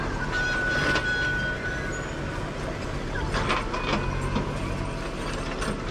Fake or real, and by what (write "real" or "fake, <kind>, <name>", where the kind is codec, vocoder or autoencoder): real